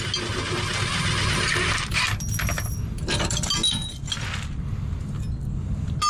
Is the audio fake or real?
real